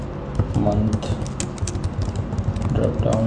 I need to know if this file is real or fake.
real